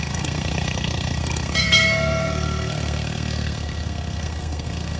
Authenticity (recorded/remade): remade